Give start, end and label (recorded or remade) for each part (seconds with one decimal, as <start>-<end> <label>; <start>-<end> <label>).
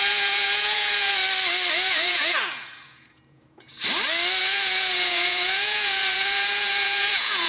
0.0-1.2 remade; 1.2-1.7 recorded; 1.7-3.7 remade; 3.7-4.4 recorded; 4.4-7.5 remade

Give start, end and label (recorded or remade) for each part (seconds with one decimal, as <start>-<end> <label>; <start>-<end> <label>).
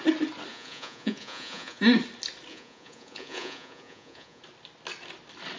0.0-0.5 recorded; 0.5-1.8 remade; 1.8-2.5 recorded; 2.5-4.4 remade; 4.4-5.6 recorded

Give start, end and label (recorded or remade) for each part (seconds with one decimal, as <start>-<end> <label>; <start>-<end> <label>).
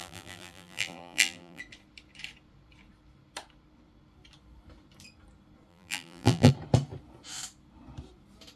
0.0-1.6 remade; 1.6-5.7 recorded; 5.7-6.5 remade; 6.5-8.6 recorded